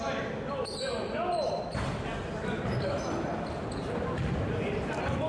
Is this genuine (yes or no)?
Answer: yes